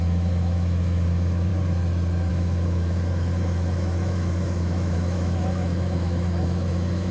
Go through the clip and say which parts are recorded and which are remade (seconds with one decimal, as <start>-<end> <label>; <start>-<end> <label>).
0.0-1.5 remade; 1.5-2.3 recorded; 2.3-7.1 remade